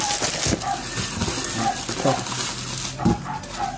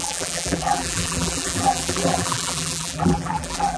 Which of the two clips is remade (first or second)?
second